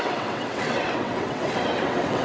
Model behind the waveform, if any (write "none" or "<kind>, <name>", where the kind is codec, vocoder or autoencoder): vocoder, WaveNeXt